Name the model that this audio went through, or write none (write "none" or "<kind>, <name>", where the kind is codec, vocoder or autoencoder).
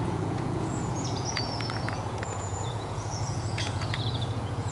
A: vocoder, Vocos